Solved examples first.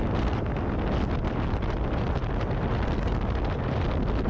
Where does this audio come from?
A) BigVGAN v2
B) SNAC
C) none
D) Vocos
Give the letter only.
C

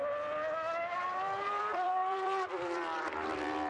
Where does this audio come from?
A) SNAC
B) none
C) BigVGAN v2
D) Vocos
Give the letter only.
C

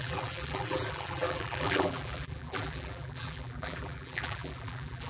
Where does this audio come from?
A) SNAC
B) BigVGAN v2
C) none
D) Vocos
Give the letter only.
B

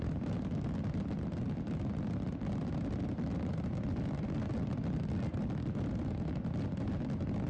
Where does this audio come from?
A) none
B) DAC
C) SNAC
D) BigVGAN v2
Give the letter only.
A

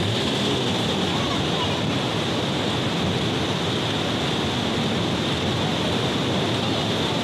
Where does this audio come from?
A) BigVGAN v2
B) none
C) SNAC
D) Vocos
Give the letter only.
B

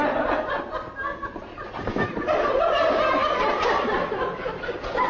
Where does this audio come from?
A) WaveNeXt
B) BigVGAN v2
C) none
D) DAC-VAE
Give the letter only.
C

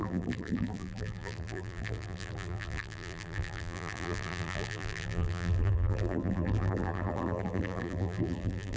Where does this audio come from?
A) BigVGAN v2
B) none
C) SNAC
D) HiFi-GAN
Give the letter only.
A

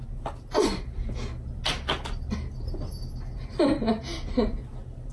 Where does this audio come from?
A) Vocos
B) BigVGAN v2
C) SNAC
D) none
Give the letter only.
D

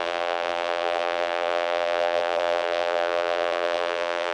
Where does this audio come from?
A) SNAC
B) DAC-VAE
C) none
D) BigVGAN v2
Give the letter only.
D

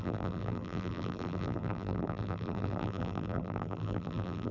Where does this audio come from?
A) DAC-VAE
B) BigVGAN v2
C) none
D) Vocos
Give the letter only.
B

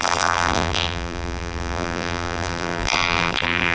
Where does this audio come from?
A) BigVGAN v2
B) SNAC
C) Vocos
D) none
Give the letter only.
A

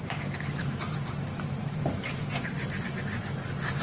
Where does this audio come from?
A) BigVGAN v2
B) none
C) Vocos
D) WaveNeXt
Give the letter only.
A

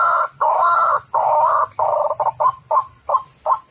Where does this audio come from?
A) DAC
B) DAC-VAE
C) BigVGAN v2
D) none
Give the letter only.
D